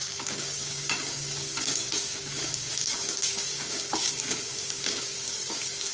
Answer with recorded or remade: remade